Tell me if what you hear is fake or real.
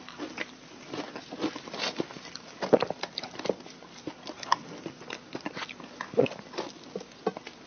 real